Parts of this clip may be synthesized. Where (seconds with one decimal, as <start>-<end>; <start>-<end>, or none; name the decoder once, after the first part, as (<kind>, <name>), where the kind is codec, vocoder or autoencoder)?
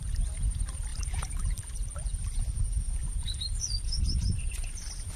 0.9-2.4 (vocoder, BigVGAN v2)